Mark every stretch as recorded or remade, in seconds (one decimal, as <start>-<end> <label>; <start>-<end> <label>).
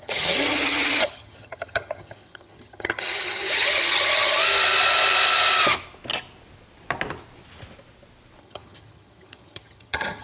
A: 0.0-4.4 remade; 4.4-8.4 recorded; 8.4-10.2 remade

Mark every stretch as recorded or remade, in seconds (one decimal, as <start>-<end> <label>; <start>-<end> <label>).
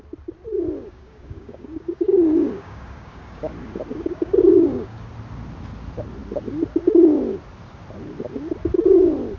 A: 0.0-0.9 recorded; 0.9-3.5 remade; 3.5-3.9 recorded; 3.9-5.1 remade; 5.1-9.4 recorded